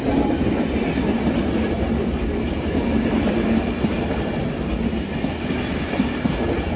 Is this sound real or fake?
real